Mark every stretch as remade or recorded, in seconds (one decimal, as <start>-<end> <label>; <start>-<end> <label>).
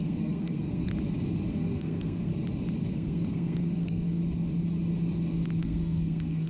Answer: 0.0-0.9 remade; 0.9-1.5 recorded; 1.5-2.3 remade; 2.3-2.9 recorded; 2.9-4.2 remade; 4.2-5.6 recorded; 5.6-6.5 remade